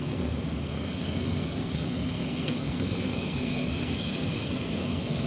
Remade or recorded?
remade